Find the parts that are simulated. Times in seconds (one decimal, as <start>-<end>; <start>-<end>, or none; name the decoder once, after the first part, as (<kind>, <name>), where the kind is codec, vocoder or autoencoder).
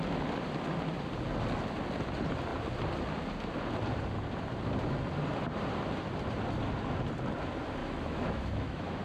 7.8-9.0 (autoencoder, DAC-VAE)